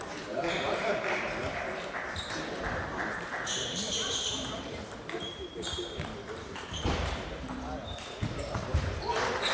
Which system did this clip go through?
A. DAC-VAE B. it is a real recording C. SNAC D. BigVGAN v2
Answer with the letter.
D